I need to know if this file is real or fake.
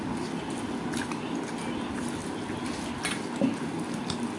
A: real